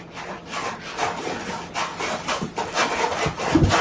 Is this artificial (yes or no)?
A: no